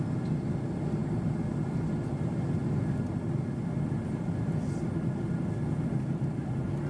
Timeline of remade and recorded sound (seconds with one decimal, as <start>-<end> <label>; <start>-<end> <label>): 0.0-6.9 recorded

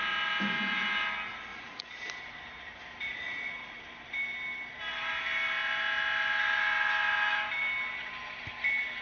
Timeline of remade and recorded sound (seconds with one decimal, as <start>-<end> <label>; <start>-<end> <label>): 0.0-1.5 recorded; 1.5-2.2 remade; 2.2-3.1 recorded; 3.1-3.8 remade; 3.8-9.0 recorded

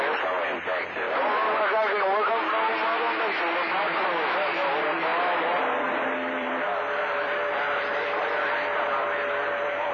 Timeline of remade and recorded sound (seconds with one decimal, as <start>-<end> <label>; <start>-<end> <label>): 0.0-5.1 recorded; 5.1-9.9 remade